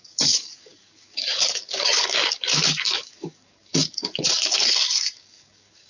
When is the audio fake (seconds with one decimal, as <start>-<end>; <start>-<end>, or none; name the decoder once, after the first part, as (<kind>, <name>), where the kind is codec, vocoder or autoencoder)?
0.0-5.9 (codec, DAC)